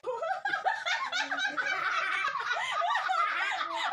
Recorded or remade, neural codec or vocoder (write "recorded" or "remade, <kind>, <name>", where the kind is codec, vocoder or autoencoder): recorded